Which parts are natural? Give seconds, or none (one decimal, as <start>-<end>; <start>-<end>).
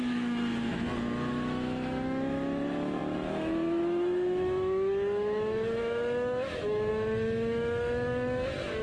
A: 0.7-1.3